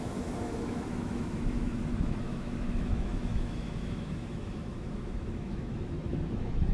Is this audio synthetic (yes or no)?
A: yes